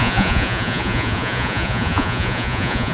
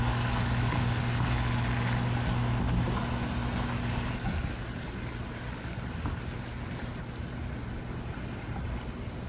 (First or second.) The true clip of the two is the second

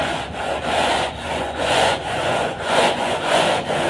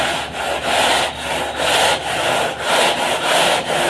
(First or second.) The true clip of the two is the second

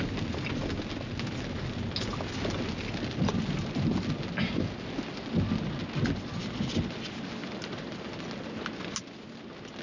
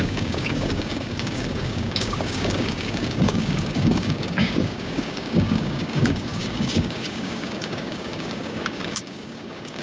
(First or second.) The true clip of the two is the first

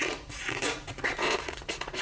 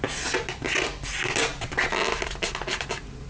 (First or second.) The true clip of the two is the second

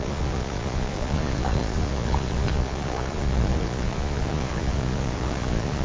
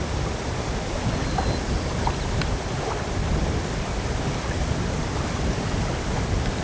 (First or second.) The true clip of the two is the second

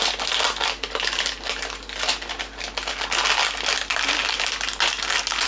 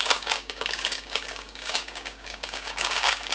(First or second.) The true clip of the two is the first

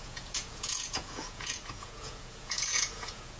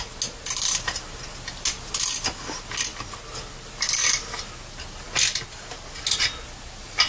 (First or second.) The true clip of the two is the second